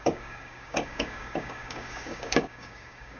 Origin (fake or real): fake